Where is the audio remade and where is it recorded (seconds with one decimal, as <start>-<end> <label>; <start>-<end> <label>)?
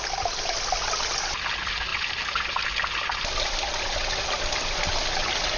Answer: 0.0-5.6 recorded